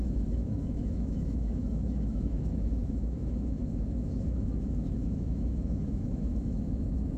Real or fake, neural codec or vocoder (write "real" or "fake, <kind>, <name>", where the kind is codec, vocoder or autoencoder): fake, autoencoder, DAC-VAE